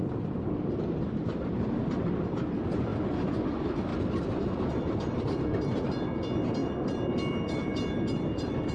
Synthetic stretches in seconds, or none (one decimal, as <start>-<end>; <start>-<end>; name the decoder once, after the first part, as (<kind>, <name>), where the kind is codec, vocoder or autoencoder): none